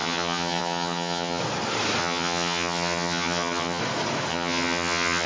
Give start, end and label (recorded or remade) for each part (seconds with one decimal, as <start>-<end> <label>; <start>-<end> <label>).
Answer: 0.0-1.4 remade; 1.4-2.0 recorded; 2.0-3.8 remade; 3.8-4.3 recorded; 4.3-5.3 remade